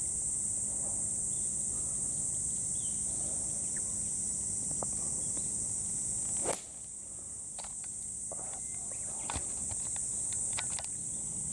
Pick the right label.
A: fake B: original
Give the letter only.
B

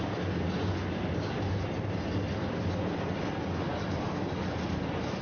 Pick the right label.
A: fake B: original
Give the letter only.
B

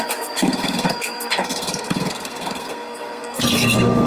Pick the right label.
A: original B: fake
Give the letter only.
B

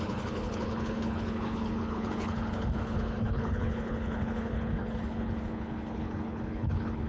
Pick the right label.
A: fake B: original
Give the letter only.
A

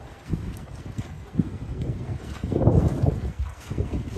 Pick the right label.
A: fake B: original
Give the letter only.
A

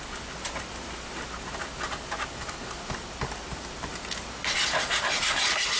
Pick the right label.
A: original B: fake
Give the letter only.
A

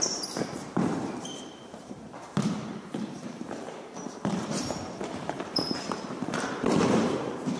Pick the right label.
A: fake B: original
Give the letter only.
A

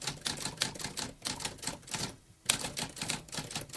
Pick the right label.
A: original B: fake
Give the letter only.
A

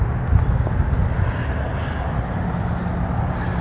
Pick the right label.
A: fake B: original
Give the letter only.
B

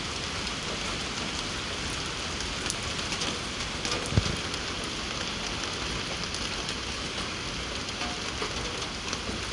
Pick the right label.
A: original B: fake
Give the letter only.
A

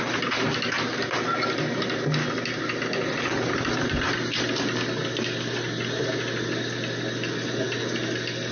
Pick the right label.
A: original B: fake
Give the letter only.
A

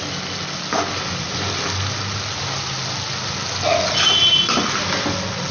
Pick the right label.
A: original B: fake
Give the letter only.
A